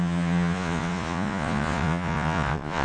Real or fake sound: fake